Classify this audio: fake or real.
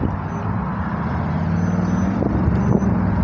real